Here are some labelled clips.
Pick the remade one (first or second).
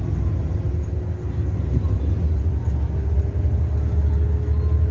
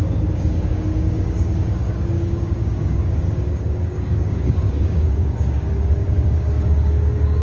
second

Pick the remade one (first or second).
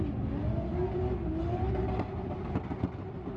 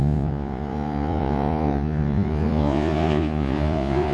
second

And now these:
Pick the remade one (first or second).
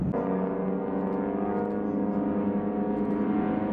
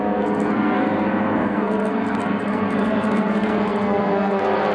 second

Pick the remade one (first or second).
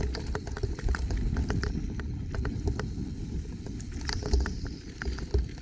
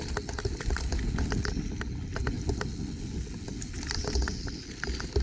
first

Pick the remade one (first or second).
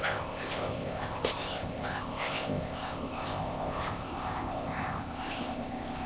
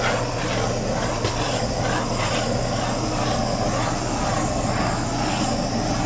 first